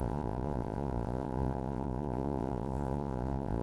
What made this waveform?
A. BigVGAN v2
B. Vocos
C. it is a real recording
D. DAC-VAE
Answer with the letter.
B